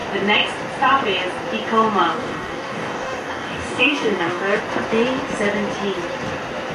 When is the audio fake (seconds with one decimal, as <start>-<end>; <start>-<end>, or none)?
2.1-4.6